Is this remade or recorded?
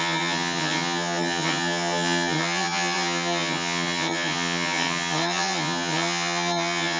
remade